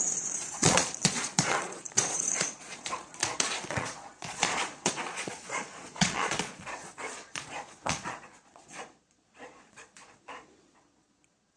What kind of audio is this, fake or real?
fake